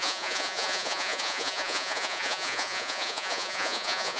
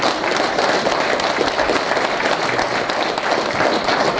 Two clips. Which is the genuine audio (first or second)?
second